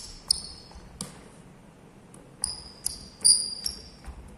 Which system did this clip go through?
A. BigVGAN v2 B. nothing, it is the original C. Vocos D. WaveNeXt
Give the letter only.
B